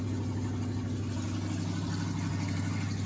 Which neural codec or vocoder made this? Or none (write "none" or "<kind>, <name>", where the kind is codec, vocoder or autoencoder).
none